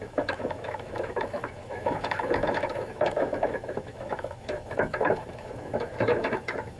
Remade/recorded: remade